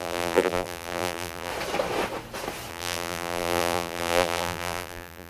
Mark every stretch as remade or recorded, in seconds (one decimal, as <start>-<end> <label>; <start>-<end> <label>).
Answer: 0.0-1.5 remade; 1.5-2.7 recorded; 2.7-5.3 remade